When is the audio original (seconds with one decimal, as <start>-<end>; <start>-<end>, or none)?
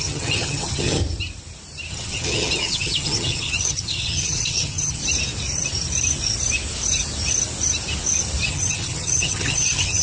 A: 1.0-1.9; 5.0-8.5